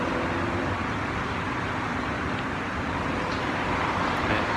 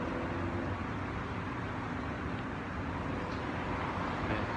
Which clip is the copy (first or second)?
first